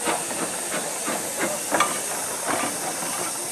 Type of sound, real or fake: real